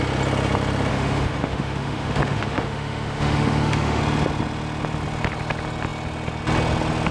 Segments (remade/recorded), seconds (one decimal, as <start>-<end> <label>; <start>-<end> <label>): 0.0-0.9 recorded; 0.9-4.0 remade; 4.0-7.1 recorded